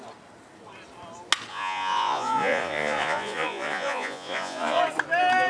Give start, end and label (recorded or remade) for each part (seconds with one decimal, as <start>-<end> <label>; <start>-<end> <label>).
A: 0.0-1.5 recorded; 1.5-4.8 remade; 4.8-5.5 recorded

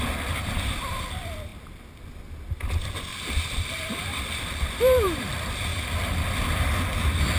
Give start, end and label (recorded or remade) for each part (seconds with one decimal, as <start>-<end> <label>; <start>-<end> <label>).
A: 0.0-3.1 recorded; 3.1-5.3 remade; 5.3-5.7 recorded; 5.7-6.6 remade; 6.6-7.4 recorded

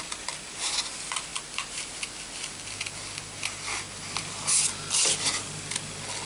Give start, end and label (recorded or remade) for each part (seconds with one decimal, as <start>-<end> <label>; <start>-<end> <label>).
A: 0.0-6.2 recorded

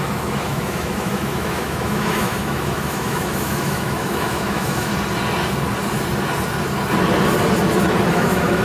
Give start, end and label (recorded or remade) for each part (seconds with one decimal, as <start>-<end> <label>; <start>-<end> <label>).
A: 0.0-4.9 remade; 4.9-8.1 recorded; 8.1-8.6 remade

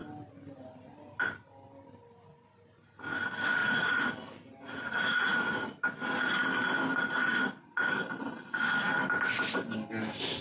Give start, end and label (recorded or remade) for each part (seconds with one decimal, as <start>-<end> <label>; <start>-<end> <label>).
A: 0.0-3.6 recorded; 3.6-4.1 remade; 4.1-4.6 recorded; 4.6-5.8 remade; 5.8-10.4 recorded

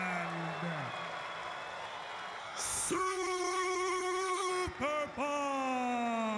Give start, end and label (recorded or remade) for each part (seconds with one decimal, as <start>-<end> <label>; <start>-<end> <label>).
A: 0.0-2.4 recorded; 2.4-4.5 remade; 4.5-6.4 recorded

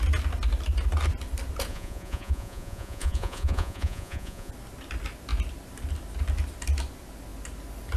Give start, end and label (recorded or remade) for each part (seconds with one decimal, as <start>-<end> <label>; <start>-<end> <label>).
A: 0.0-1.7 recorded; 1.7-4.5 remade; 4.5-8.0 recorded